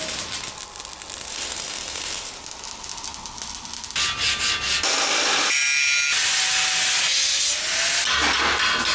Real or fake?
real